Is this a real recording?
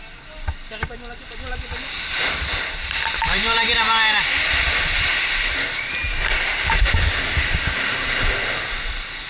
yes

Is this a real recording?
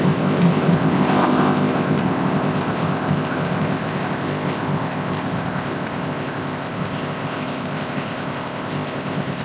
no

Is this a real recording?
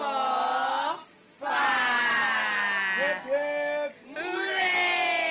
yes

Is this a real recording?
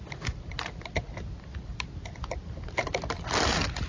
yes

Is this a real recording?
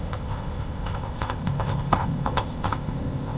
no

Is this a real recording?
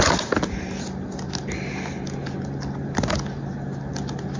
yes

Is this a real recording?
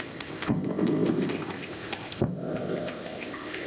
no